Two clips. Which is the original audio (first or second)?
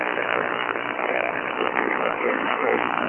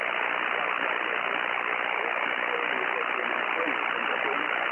second